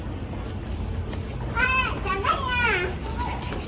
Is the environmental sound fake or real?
real